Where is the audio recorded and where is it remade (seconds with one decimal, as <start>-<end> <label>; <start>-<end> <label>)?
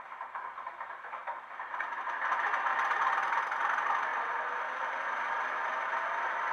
0.0-4.1 recorded; 4.1-4.6 remade; 4.6-6.5 recorded